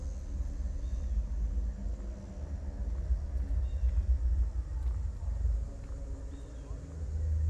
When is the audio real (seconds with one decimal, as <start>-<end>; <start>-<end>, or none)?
0.0-7.5